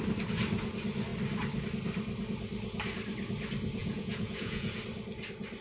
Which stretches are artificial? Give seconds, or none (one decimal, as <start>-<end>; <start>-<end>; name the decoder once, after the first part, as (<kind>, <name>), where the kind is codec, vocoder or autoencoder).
3.8-4.8 (vocoder, Vocos)